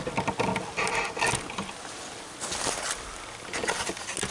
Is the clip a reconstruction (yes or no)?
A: no